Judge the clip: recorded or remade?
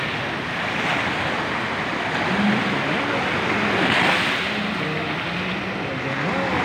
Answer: recorded